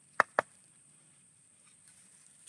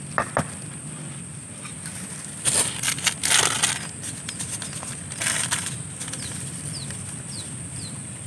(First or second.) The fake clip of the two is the first